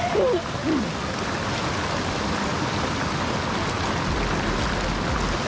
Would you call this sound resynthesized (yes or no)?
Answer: no